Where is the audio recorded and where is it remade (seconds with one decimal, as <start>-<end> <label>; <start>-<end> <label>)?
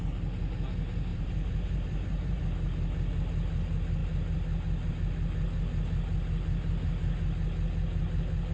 0.0-1.1 recorded; 1.1-2.4 remade; 2.4-8.5 recorded